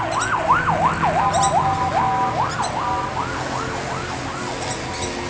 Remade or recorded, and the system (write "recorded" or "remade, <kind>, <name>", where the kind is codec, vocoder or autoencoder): recorded